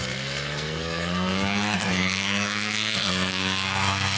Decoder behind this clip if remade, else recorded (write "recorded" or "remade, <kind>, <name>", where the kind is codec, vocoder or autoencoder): remade, codec, SNAC